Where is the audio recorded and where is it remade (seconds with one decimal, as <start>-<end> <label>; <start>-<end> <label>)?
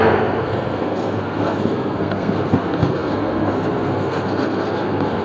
0.0-5.2 remade